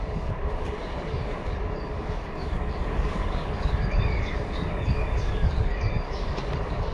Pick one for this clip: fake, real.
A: fake